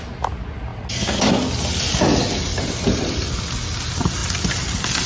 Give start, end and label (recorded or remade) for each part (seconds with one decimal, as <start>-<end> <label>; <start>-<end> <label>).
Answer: 0.0-5.1 recorded